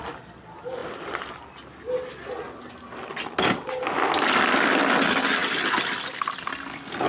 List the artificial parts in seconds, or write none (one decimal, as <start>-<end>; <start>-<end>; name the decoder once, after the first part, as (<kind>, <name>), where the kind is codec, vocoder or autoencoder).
none

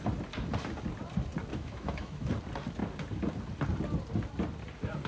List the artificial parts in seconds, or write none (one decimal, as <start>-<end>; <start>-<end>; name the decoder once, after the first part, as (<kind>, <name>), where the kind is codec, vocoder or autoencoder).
1.5-2.3 (autoencoder, DAC-VAE)

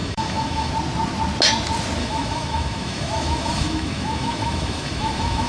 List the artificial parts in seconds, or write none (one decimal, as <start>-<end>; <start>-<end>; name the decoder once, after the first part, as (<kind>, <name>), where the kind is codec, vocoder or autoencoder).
0.0-0.7 (autoencoder, DAC-VAE); 2.0-5.5

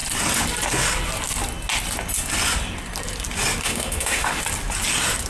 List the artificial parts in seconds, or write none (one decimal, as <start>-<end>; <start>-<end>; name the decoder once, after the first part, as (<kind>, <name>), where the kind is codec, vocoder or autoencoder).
3.6-4.4 (autoencoder, DAC-VAE)

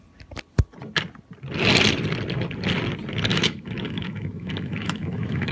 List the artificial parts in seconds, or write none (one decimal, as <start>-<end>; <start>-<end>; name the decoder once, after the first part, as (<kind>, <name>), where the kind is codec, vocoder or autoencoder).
3.3-5.5 (autoencoder, DAC-VAE)

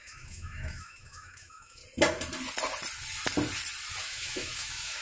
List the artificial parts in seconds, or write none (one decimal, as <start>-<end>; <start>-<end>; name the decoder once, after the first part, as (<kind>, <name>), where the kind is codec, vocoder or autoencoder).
0.0-1.8 (autoencoder, DAC-VAE); 4.0-5.0

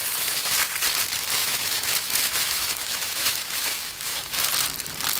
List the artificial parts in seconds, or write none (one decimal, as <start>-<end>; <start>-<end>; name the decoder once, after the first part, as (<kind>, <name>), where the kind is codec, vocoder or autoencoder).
0.0-0.5 (autoencoder, DAC-VAE); 1.4-4.5

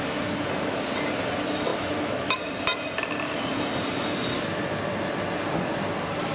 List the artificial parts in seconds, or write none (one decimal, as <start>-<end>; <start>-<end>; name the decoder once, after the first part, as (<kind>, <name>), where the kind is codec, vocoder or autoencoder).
1.7-2.4 (autoencoder, DAC-VAE)